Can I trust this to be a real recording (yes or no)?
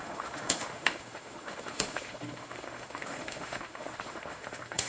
no